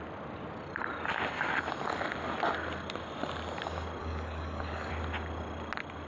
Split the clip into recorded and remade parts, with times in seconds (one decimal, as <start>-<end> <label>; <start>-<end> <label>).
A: 0.0-4.0 recorded; 4.0-4.9 remade; 4.9-6.1 recorded